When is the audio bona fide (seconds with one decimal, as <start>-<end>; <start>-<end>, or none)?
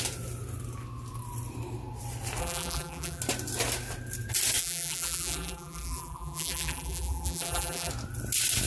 0.0-2.4; 3.2-4.6; 7.9-8.7